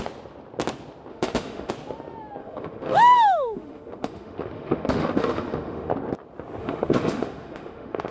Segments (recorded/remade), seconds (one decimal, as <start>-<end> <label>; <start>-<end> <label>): 0.0-1.1 recorded; 1.1-1.7 remade; 1.7-2.4 recorded; 2.4-5.9 remade; 5.9-6.6 recorded; 6.6-8.1 remade